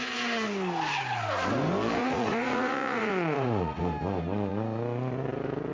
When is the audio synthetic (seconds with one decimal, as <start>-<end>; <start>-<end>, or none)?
2.0-3.8